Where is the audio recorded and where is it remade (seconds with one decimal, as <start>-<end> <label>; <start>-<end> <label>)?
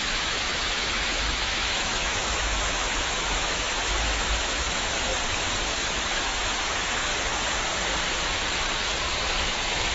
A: 0.0-5.1 remade; 5.1-5.7 recorded; 5.7-7.1 remade; 7.1-9.1 recorded; 9.1-9.9 remade